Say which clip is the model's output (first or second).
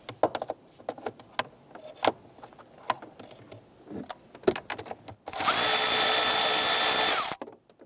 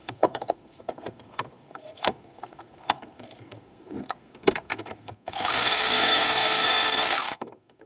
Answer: second